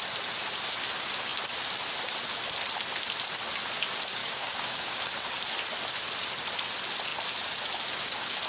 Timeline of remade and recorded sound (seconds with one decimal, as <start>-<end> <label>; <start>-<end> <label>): 0.0-4.2 recorded; 4.2-5.1 remade; 5.1-8.5 recorded